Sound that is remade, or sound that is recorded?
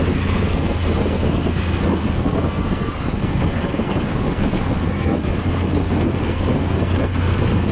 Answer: remade